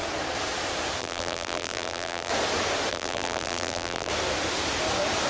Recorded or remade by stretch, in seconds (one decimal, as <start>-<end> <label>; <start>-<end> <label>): 0.0-1.0 recorded; 1.0-2.3 remade; 2.3-2.9 recorded; 2.9-4.1 remade; 4.1-5.3 recorded